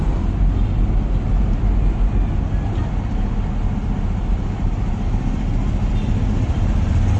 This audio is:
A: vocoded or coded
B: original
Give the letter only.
B